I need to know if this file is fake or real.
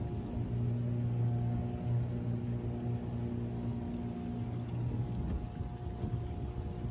real